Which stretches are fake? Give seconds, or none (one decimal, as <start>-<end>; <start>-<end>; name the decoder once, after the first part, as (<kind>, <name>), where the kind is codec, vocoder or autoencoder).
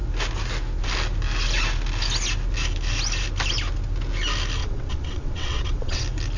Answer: 4.6-6.0 (vocoder, WaveNeXt)